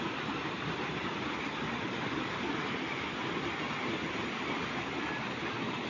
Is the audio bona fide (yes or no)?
yes